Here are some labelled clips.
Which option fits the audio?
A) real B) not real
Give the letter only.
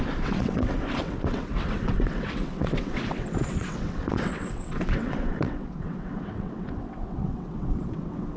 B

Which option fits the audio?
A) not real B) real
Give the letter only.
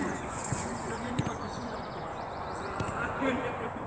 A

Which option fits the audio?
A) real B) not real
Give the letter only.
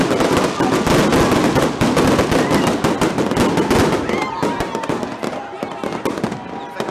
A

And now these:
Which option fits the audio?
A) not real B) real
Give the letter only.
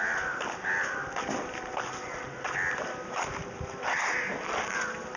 B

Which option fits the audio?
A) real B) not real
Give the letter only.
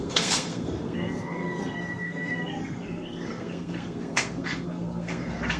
B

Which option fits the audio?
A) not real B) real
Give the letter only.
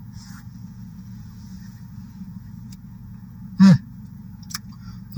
A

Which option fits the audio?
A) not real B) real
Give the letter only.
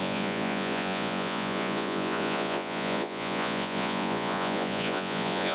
A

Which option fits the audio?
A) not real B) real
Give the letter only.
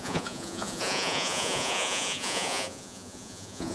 A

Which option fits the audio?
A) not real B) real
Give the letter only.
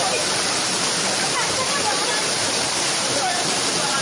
A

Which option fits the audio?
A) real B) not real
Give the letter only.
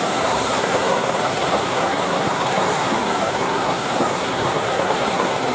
B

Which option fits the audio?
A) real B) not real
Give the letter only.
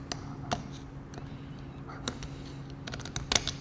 A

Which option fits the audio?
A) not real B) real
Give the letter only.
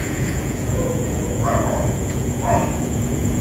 A